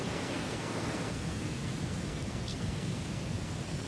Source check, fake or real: fake